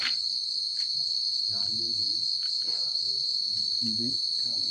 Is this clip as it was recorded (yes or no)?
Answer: no